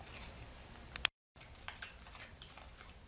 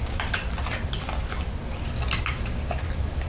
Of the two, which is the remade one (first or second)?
first